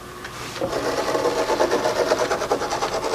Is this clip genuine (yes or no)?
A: yes